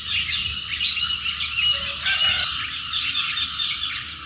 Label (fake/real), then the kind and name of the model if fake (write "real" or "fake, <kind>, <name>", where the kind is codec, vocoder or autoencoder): real